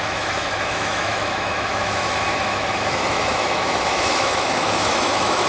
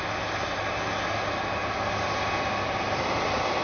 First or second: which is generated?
first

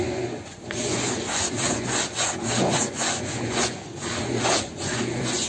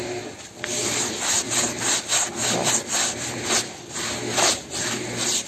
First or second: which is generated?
first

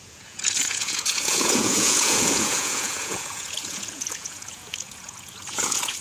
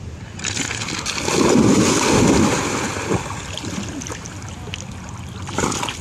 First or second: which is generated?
first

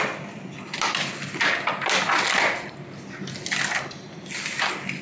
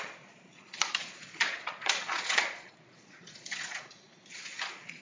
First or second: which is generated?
second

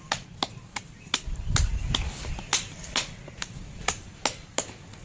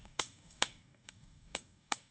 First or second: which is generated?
second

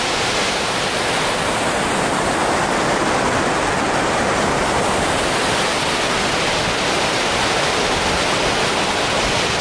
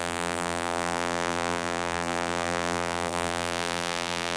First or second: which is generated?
second